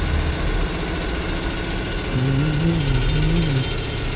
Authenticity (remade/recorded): recorded